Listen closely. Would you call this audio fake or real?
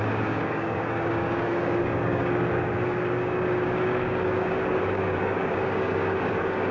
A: fake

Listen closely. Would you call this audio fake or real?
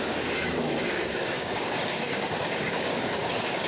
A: fake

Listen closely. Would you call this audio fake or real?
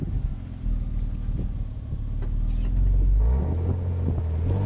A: real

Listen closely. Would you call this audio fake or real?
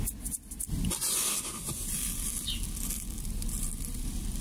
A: real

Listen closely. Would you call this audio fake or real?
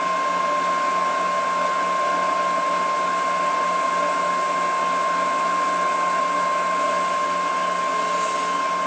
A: real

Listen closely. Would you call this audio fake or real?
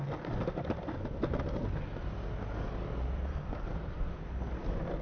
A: real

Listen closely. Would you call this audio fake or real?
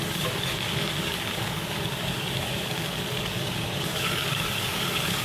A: fake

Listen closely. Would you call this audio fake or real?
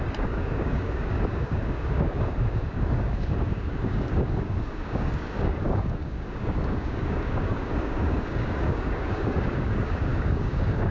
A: fake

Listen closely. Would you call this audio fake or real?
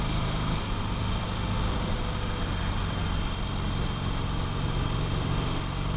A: real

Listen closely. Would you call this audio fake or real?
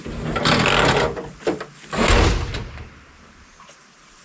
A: real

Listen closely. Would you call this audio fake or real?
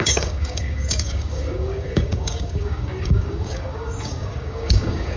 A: fake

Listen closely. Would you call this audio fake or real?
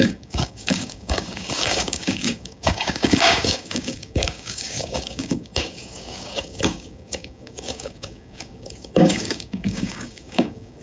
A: fake